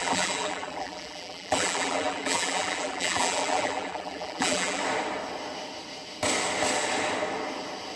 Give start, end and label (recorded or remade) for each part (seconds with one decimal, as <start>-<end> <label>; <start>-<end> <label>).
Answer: 0.0-4.8 remade; 4.8-8.0 recorded